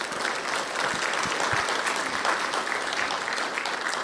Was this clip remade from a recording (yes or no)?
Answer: no